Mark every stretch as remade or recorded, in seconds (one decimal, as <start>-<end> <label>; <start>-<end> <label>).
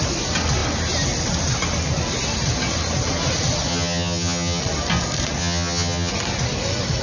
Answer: 0.0-3.7 recorded; 3.7-4.6 remade; 4.6-5.4 recorded; 5.4-6.1 remade; 6.1-7.0 recorded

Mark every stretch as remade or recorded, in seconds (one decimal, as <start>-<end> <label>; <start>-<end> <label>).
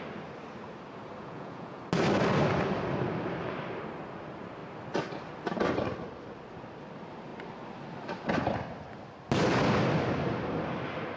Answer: 0.0-1.2 recorded; 1.2-1.8 remade; 1.8-11.2 recorded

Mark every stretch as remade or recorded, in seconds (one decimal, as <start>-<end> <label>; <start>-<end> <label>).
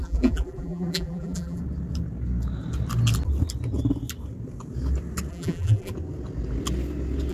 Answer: 0.0-1.6 remade; 1.6-5.3 recorded; 5.3-5.9 remade; 5.9-7.3 recorded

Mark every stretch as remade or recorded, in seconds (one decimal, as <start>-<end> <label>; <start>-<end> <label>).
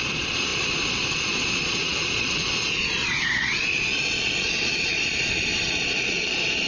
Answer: 0.0-6.7 remade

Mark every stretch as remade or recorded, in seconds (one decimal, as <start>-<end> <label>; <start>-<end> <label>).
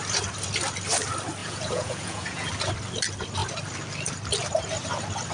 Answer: 0.0-1.4 recorded; 1.4-2.5 remade; 2.5-5.3 recorded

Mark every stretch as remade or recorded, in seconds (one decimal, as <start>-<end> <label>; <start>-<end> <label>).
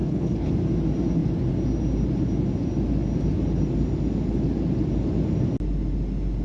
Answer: 0.0-0.5 remade; 0.5-6.4 recorded